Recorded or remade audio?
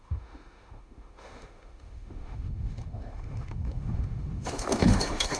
remade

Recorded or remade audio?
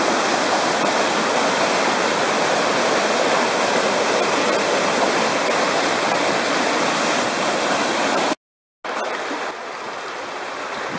recorded